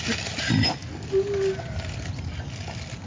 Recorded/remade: recorded